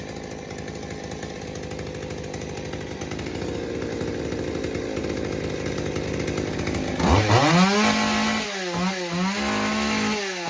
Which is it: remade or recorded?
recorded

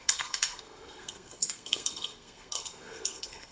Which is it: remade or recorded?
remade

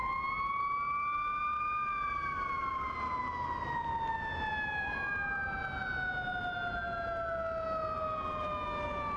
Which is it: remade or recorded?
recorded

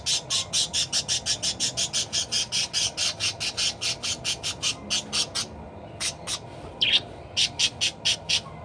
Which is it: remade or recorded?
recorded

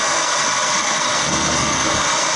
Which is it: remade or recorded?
remade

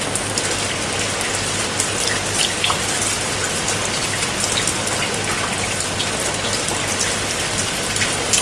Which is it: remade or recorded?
recorded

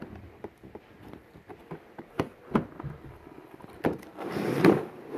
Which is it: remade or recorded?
recorded